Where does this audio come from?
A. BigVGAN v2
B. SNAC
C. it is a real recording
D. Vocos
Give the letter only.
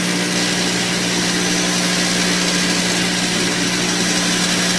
C